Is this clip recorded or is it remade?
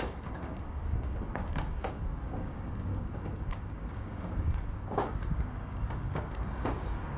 remade